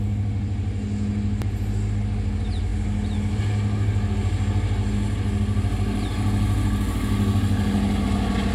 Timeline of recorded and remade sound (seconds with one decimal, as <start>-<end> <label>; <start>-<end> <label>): 0.0-8.5 recorded